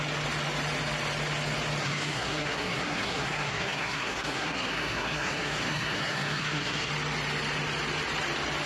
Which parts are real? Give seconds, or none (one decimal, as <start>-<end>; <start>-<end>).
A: 0.0-1.8; 6.9-8.7